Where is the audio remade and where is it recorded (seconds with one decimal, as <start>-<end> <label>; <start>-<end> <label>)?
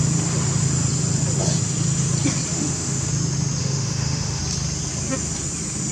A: 0.0-2.5 recorded; 2.5-3.1 remade; 3.1-3.6 recorded; 3.6-4.4 remade; 4.4-5.9 recorded